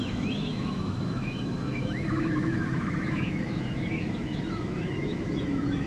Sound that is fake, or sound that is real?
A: fake